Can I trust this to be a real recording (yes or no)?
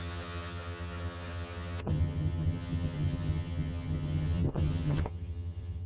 no